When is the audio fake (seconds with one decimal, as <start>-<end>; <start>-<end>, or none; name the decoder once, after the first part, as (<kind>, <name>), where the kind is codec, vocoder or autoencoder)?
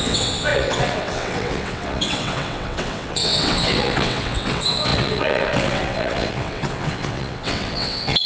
0.0-8.3 (vocoder, WaveNeXt)